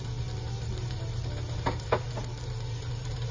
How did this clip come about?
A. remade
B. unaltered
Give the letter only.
B